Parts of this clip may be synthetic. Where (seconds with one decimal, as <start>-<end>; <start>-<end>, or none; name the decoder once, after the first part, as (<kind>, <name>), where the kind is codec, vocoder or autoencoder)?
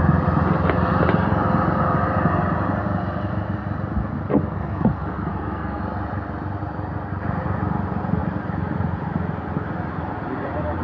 4.3-5.8 (codec, SNAC)